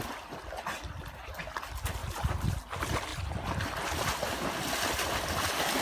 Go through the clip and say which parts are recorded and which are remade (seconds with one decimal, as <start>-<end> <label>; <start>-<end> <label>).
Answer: 0.0-2.0 recorded; 2.0-2.6 remade; 2.6-5.8 recorded